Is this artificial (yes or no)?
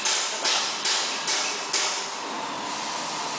no